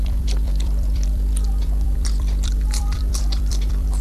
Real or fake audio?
fake